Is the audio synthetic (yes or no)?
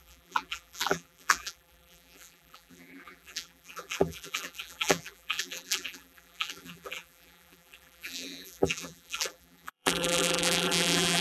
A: yes